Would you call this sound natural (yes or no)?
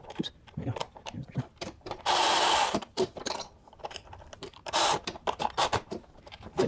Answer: no